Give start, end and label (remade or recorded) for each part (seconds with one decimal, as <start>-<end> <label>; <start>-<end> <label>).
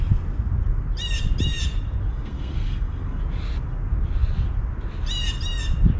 0.0-2.1 recorded; 2.1-3.2 remade; 3.2-6.0 recorded